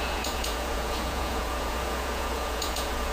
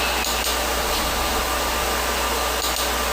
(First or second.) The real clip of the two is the second